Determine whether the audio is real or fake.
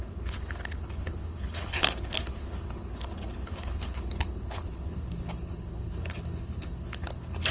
fake